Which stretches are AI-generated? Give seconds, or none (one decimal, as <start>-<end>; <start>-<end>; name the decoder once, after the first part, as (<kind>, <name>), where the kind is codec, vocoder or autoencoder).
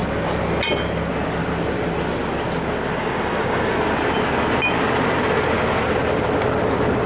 3.0-3.7 (codec, DAC)